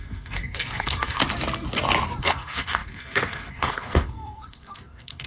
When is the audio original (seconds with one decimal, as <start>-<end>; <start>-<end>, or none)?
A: 1.2-2.2